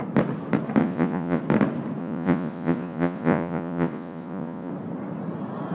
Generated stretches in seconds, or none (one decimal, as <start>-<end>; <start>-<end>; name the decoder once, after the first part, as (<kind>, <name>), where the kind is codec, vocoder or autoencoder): 0.8-1.4 (vocoder, Vocos); 2.0-4.7